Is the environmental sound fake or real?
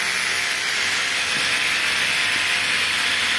real